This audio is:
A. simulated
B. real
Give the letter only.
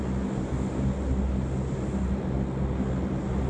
B